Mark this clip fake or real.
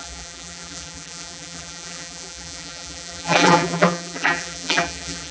fake